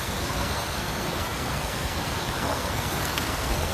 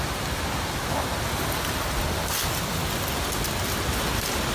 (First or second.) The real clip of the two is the second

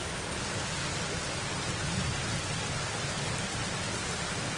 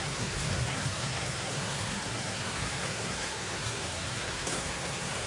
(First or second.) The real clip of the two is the first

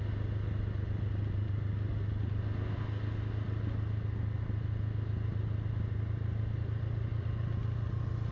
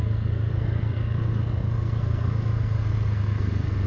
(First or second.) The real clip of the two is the first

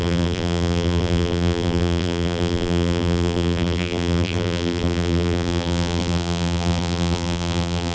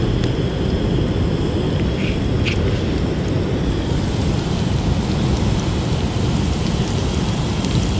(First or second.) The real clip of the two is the second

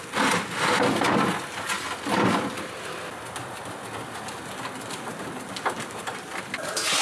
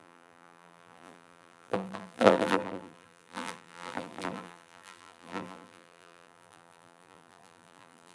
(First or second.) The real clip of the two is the first